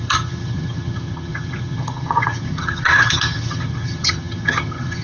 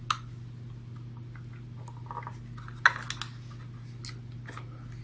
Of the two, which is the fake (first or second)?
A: first